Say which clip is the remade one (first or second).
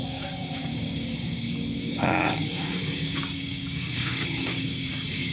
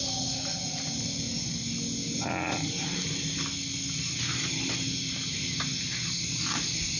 first